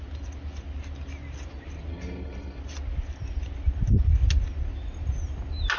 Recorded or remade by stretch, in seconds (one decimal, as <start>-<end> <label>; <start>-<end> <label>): 0.0-1.9 recorded; 1.9-2.6 remade; 2.6-5.8 recorded